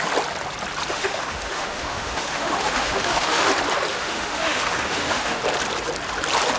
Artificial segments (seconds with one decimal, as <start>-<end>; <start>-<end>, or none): 0.9-3.5; 3.9-5.4